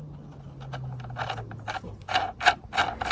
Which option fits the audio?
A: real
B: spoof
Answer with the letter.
A